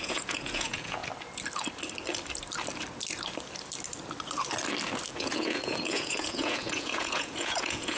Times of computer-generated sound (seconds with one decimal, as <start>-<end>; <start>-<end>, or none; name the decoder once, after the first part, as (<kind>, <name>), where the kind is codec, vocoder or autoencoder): 0.0-1.0 (vocoder, Vocos); 5.1-8.0